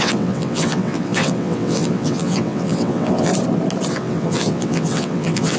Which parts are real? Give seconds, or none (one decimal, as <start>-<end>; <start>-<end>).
3.3-3.9